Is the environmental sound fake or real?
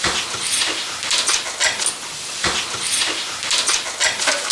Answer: real